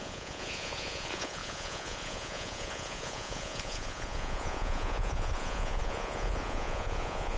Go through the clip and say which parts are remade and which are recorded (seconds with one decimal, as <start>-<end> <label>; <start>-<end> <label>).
0.0-7.4 remade